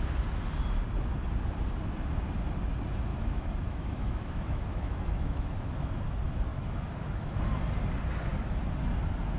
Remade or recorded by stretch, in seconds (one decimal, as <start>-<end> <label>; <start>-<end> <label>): 0.0-3.1 recorded; 3.1-6.0 remade; 6.0-6.5 recorded; 6.5-7.4 remade; 7.4-9.4 recorded